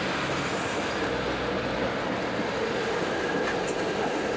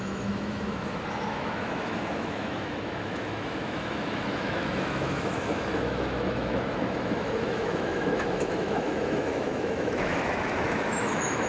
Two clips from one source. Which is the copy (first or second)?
second